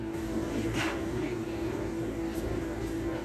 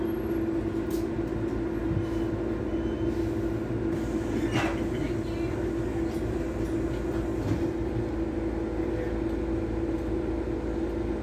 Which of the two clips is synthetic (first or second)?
first